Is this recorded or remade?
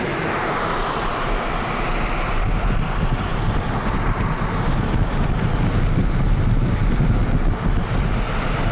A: recorded